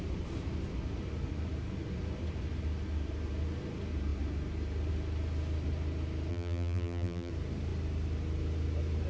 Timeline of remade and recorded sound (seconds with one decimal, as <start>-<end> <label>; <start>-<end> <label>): 0.0-6.3 recorded; 6.3-7.3 remade; 7.3-9.1 recorded